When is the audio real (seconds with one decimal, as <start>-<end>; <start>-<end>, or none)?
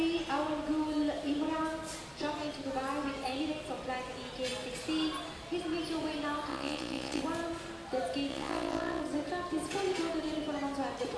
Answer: 0.0-6.5; 7.2-8.3; 9.0-11.2